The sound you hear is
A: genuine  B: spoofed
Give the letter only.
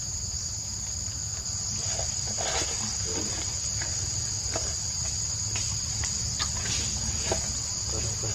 A